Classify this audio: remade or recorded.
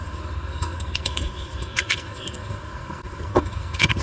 remade